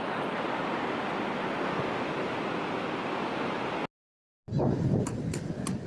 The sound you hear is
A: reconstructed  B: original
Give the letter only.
B